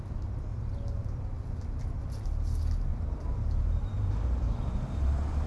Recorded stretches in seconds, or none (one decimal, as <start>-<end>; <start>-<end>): 0.0-2.9